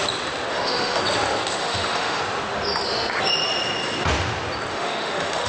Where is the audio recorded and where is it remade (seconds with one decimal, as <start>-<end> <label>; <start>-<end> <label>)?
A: 0.0-0.5 recorded; 0.5-1.0 remade; 1.0-1.6 recorded; 1.6-2.2 remade; 2.2-4.7 recorded; 4.7-5.5 remade